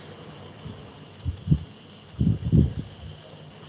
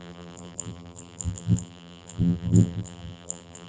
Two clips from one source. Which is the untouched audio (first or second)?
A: first